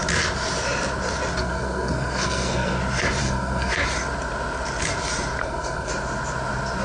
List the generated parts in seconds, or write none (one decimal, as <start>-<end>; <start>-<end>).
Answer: 1.4-2.8; 3.2-3.7; 5.4-5.9